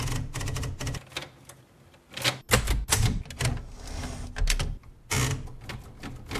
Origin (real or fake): real